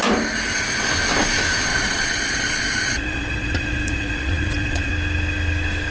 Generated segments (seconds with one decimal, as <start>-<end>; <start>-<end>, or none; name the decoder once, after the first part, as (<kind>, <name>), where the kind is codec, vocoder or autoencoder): 1.7-4.9 (vocoder, Vocos)